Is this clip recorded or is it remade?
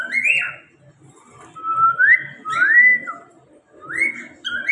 recorded